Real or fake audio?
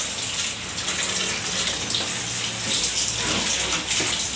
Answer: real